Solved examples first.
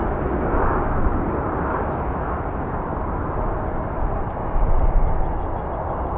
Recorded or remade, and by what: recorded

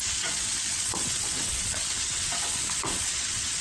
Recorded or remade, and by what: remade, vocoder, WaveNeXt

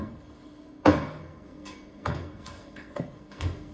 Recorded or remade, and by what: remade, codec, SNAC